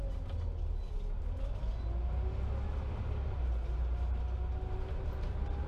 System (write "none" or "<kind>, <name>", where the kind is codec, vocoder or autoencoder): none